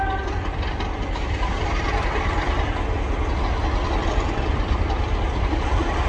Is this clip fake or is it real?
real